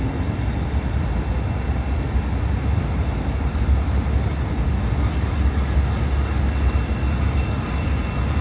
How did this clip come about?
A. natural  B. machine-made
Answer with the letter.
A